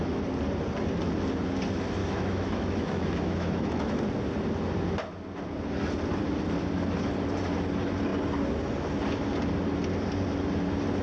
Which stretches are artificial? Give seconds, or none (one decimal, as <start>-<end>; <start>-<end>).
2.0-4.0